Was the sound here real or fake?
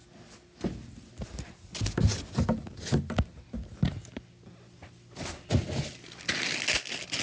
real